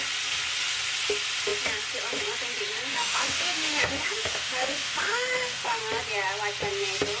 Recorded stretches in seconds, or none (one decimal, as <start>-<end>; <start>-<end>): 0.0-2.9; 5.8-7.2